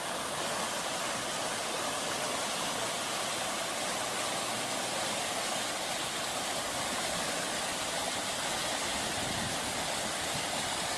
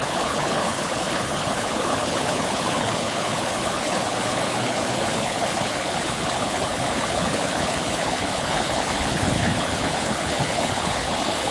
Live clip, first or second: first